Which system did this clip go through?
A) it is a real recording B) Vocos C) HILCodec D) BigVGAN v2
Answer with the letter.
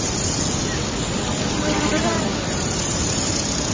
A